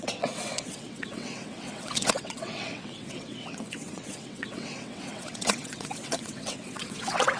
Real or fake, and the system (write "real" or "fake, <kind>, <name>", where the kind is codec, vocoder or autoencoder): fake, vocoder, WaveNeXt